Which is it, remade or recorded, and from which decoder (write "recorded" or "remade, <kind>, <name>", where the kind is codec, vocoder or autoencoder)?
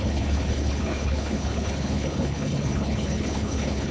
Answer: remade, codec, HILCodec